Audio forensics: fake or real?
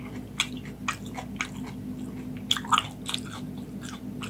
real